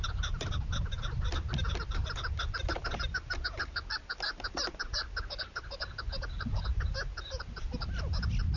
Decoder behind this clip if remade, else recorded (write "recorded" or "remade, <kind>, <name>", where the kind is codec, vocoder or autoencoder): recorded